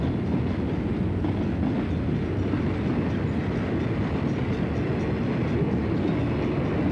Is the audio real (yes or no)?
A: yes